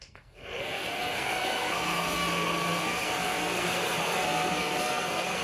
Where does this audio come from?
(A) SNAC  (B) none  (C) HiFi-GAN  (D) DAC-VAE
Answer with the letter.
A